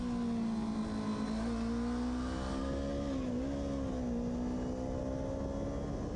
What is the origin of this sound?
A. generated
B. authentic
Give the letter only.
B